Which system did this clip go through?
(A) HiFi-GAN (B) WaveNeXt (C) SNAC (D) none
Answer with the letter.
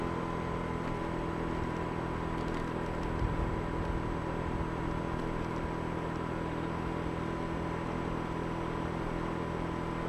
D